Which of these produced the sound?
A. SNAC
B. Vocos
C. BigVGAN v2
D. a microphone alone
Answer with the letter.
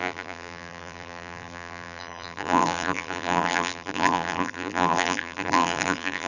C